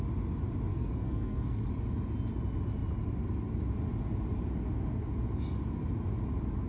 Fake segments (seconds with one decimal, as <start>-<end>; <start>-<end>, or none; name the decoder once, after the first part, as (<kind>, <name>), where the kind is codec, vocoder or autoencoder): 0.7-1.7 (codec, SNAC)